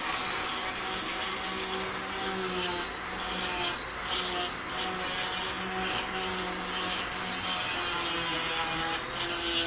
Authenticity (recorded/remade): recorded